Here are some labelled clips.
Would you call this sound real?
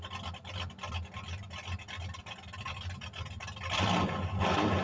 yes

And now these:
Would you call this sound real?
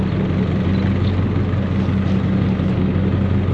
yes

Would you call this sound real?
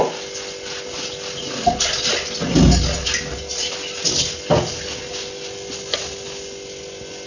yes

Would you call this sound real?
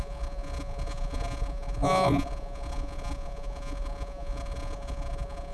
no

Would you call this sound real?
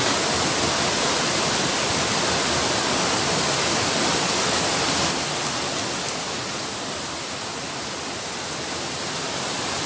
yes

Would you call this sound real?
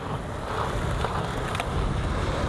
yes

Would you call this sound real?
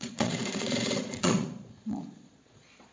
no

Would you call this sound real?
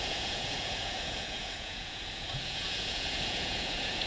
no